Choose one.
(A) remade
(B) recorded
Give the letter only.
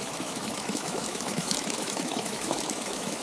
A